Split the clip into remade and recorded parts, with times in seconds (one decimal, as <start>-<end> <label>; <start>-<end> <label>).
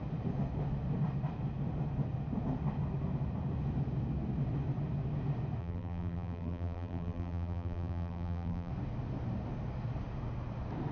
0.0-5.6 recorded; 5.6-8.7 remade; 8.7-10.9 recorded